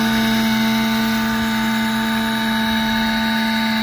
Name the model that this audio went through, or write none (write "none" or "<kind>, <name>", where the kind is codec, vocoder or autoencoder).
none